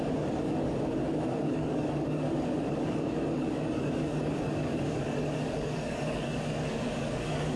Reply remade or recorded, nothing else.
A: remade